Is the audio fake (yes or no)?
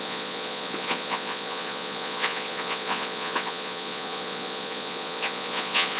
yes